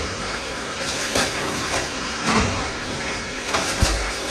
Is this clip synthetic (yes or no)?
yes